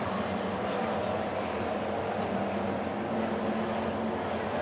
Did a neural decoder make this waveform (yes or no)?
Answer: no